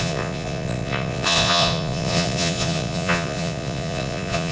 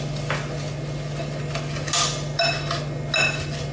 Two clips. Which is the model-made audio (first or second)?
first